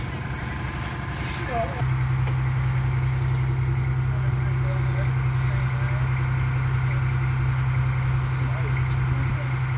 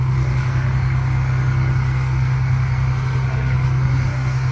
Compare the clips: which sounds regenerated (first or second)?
second